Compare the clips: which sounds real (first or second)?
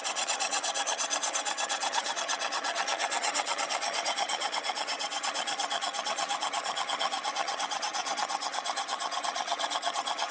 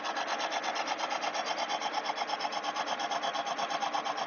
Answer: second